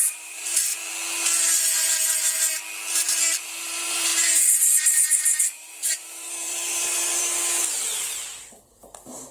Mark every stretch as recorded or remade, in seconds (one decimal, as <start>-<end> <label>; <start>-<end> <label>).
0.0-0.7 remade; 0.7-3.4 recorded; 3.4-9.3 remade